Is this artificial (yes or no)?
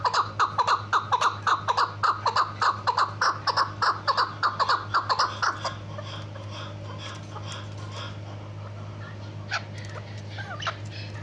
no